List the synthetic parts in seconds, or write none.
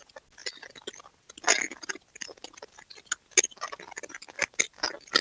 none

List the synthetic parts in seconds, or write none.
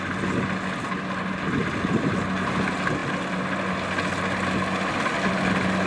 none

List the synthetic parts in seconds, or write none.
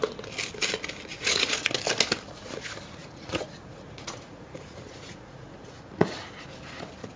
1.1-1.7 (vocoder, Vocos); 3.0-6.1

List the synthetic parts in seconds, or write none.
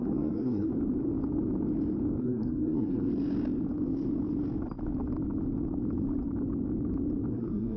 0.0-0.7 (codec, SNAC); 2.2-3.1; 7.3-7.8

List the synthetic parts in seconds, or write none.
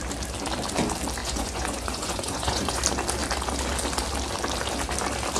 1.2-2.8 (vocoder, Vocos)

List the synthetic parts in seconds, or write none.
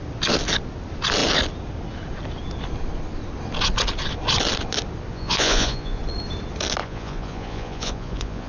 5.1-6.0 (vocoder, Vocos); 6.8-8.5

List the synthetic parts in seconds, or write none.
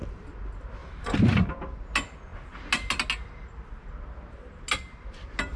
0.8-1.4 (vocoder, BigVGAN v2)